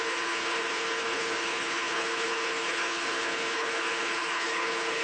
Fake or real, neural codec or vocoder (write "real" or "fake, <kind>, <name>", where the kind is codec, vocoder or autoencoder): fake, codec, HILCodec